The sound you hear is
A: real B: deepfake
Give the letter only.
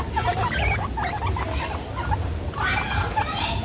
A